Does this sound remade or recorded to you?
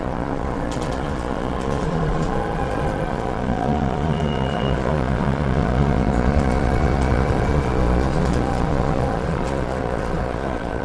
remade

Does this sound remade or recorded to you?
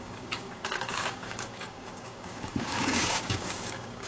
remade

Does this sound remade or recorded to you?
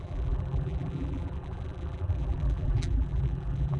remade